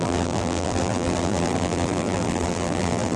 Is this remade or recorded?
remade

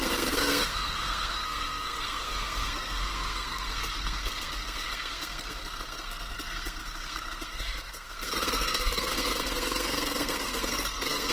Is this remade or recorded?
remade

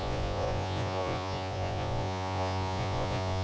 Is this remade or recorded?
remade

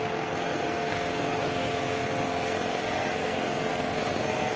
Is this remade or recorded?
remade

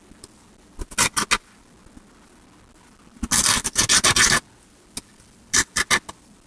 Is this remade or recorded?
recorded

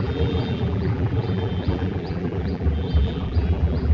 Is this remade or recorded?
remade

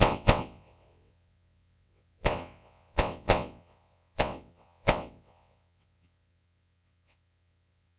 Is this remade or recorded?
remade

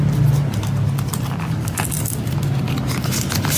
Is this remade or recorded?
recorded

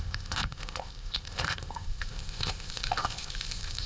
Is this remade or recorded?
remade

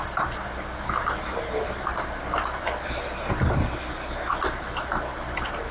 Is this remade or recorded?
recorded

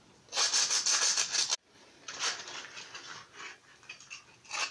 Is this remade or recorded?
recorded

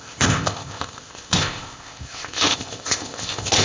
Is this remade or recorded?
remade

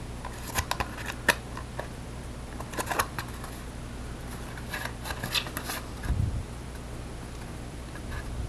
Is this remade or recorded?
recorded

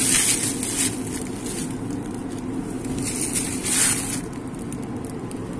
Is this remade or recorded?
recorded